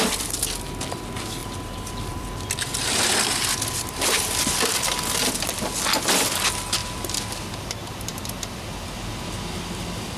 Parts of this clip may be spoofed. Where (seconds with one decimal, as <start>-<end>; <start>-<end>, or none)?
1.4-5.4; 6.8-7.7; 8.1-9.1